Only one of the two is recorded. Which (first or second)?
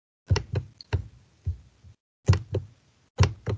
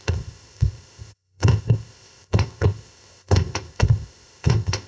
first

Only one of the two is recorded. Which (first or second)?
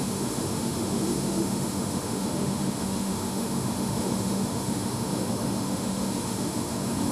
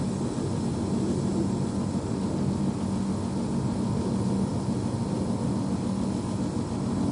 second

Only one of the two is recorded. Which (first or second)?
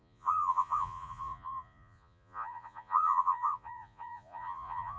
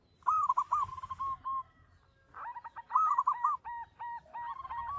second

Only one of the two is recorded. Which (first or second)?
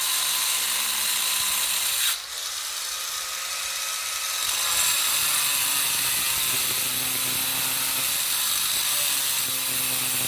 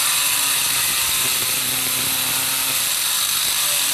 first